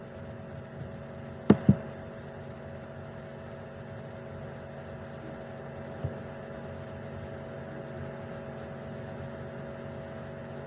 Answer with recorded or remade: recorded